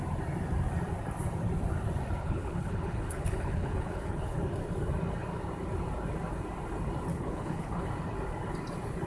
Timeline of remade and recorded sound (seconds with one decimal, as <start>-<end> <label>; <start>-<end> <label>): 0.0-2.2 recorded; 2.2-4.4 remade; 4.4-7.1 recorded; 7.1-7.8 remade; 7.8-9.1 recorded